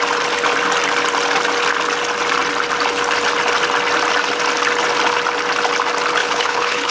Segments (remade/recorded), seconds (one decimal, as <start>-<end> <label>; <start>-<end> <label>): 0.0-6.2 recorded; 6.2-6.9 remade